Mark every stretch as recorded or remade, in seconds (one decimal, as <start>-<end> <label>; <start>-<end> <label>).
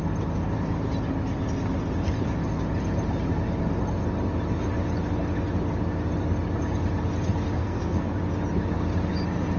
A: 0.0-7.6 recorded; 7.6-8.1 remade; 8.1-9.6 recorded